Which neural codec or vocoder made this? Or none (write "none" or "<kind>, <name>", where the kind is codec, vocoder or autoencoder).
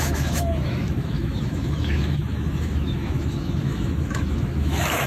autoencoder, DAC-VAE